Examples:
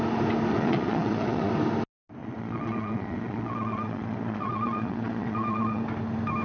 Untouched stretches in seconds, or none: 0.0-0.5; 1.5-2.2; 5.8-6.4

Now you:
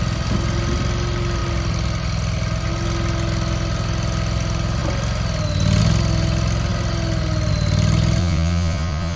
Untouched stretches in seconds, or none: 0.0-8.2

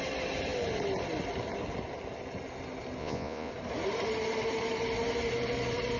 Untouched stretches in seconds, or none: 0.0-3.0; 3.5-6.0

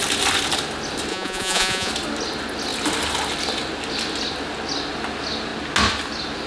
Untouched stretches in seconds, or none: 0.0-1.1; 1.9-6.5

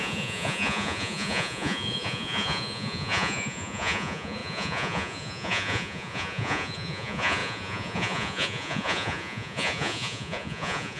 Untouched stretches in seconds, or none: none

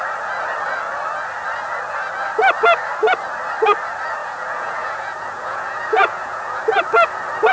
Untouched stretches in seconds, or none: 0.0-4.2; 6.6-7.5

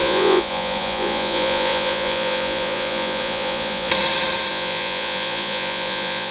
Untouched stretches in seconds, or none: 3.9-4.5